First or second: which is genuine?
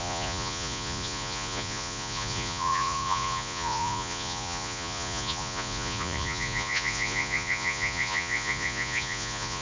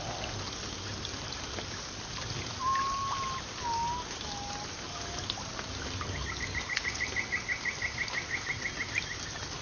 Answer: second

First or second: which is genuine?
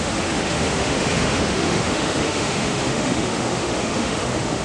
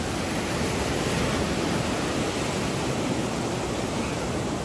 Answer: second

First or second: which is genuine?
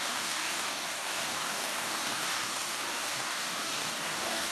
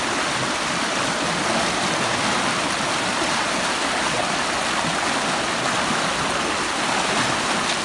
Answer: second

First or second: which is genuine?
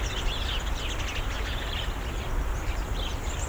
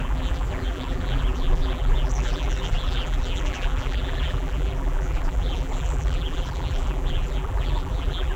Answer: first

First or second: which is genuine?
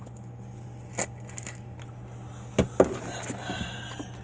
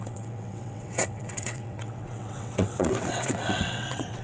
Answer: first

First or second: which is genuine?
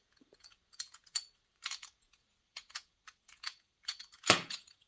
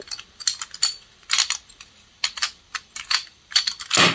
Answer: second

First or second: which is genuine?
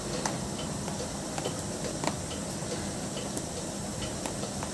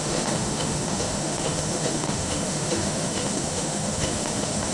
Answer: first